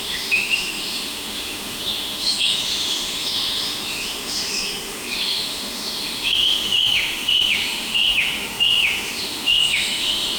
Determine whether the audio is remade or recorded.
remade